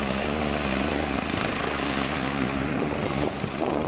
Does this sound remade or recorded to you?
remade